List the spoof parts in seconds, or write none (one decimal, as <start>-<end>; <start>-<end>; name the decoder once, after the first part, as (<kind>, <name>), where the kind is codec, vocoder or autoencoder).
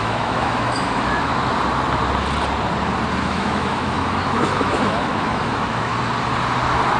0.0-1.3 (autoencoder, DAC-VAE); 3.2-5.9